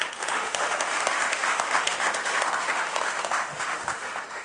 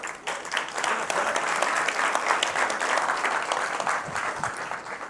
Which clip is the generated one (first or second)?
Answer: first